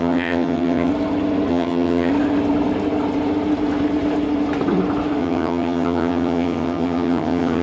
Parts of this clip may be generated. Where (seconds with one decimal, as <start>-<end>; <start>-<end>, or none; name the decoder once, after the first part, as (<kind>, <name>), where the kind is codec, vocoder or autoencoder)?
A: 0.0-0.9 (vocoder, HiFi-GAN); 1.5-2.1; 5.2-7.6